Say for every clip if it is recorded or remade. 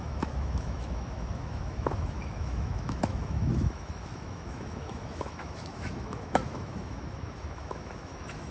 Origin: remade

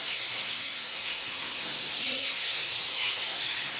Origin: remade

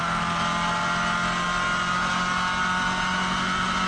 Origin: recorded